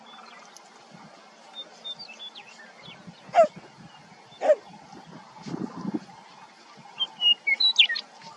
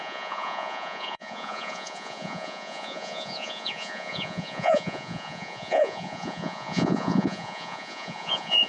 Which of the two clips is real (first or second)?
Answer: first